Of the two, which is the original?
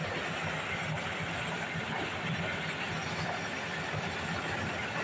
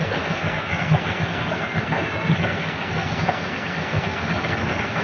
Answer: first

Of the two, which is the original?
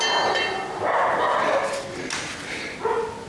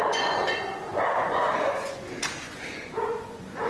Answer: first